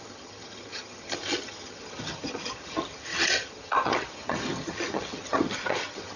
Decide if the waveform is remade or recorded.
remade